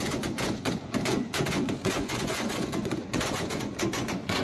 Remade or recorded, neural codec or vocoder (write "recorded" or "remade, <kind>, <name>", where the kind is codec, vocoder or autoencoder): remade, vocoder, Vocos